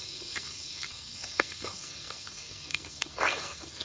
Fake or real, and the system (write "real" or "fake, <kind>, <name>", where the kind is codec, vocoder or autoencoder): fake, codec, SNAC